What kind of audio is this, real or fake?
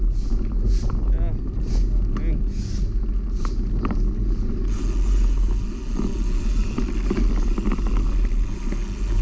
real